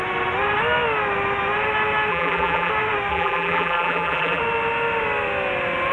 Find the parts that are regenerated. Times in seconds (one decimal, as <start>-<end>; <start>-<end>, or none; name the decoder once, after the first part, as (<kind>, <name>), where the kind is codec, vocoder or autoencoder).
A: 2.1-2.7 (vocoder, BigVGAN v2); 3.1-4.4